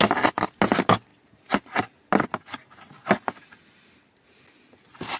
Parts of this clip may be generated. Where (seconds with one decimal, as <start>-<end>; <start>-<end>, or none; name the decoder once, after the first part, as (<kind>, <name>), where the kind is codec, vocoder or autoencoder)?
none